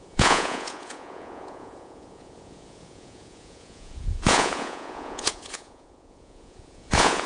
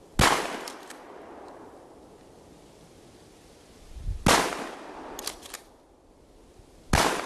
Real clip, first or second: second